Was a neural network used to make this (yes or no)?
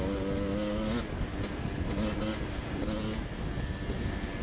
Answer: no